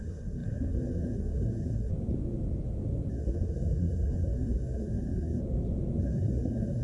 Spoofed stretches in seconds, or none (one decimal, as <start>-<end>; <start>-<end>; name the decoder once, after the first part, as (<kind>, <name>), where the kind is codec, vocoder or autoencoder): 0.0-1.9 (codec, SNAC); 3.1-5.4; 6.0-6.8